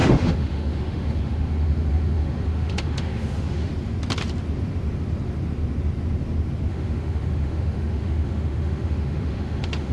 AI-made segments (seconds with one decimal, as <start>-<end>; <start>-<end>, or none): 0.0-3.7; 6.7-9.9